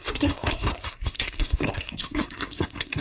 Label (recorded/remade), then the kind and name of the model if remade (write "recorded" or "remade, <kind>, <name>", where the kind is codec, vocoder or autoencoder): remade, codec, SNAC